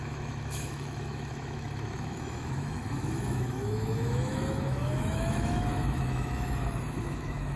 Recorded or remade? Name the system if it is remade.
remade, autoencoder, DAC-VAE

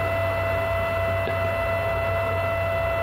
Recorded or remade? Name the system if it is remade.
recorded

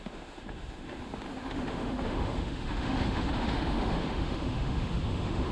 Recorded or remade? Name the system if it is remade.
remade, autoencoder, DAC-VAE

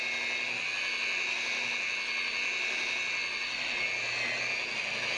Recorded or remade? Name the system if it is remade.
recorded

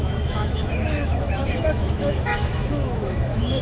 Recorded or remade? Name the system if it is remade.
remade, autoencoder, DAC-VAE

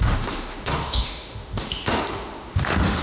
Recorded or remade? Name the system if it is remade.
remade, autoencoder, DAC-VAE